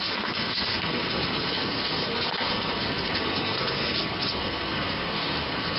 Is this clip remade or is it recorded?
remade